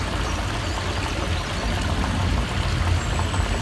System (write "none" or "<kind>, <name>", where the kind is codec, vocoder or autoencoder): none